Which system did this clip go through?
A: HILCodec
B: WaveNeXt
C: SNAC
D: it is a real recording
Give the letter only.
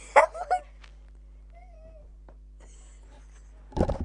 D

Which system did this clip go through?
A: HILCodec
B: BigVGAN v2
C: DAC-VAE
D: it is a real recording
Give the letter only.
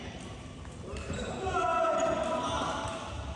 D